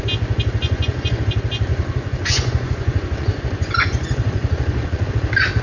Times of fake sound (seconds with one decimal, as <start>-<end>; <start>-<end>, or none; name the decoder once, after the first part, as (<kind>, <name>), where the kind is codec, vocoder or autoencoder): 0.6-1.2 (vocoder, Vocos); 1.7-5.1